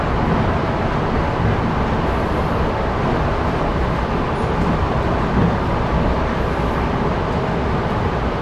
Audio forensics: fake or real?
real